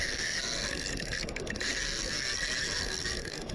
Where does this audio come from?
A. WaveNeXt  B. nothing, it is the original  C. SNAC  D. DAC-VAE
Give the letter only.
C